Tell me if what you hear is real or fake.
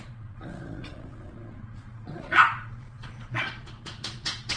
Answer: fake